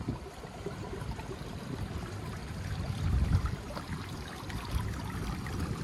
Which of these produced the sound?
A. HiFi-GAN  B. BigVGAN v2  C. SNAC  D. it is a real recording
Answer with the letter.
B